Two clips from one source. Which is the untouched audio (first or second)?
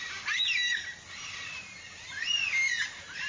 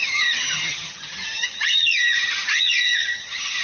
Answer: first